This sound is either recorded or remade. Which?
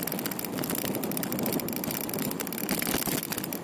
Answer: recorded